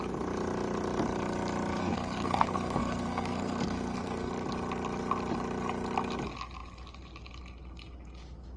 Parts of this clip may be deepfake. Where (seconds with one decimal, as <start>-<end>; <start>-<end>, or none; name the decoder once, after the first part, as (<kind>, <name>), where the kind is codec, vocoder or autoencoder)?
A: 1.8-4.3 (codec, SNAC)